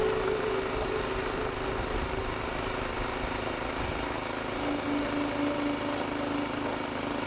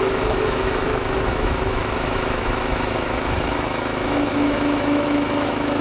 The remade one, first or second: second